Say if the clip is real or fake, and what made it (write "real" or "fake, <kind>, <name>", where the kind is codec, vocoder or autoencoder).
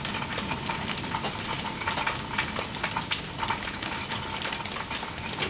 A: real